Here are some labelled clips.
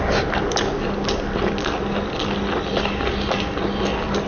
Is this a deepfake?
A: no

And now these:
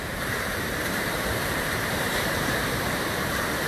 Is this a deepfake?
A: yes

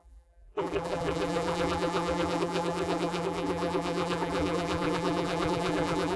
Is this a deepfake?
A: yes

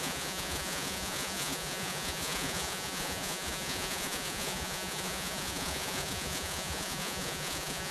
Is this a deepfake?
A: yes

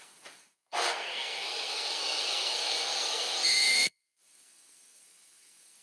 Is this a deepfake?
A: yes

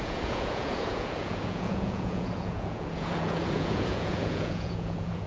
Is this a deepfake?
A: yes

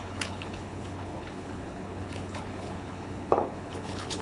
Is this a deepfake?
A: yes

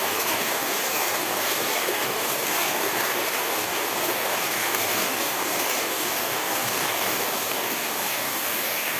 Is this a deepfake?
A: yes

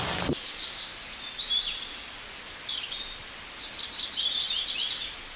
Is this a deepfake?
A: no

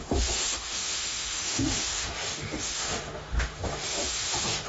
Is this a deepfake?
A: yes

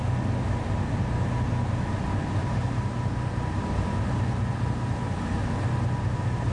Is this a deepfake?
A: no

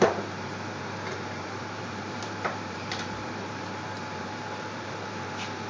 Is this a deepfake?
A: yes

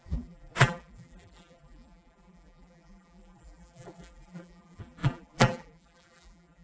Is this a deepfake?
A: yes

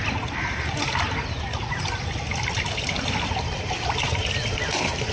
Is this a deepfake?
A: no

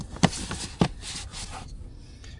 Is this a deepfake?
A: no